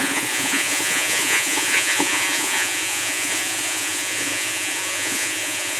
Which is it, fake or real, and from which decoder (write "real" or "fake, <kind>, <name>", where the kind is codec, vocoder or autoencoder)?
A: fake, vocoder, Vocos